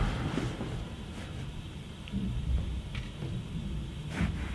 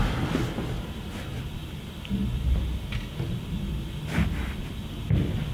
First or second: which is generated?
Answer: first